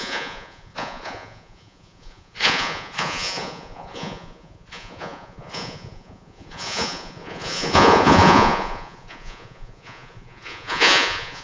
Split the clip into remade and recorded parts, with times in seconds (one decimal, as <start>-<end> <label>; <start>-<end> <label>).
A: 0.0-11.4 remade